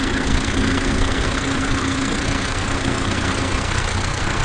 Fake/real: fake